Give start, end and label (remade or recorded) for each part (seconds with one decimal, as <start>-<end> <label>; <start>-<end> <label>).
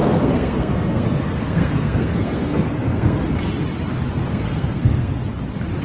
0.0-3.2 remade; 3.2-4.3 recorded; 4.3-5.1 remade; 5.1-5.8 recorded